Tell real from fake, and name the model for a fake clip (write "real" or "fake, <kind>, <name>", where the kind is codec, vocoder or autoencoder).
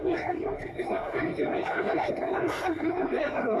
fake, codec, SNAC